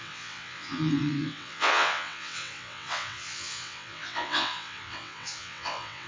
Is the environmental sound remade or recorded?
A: remade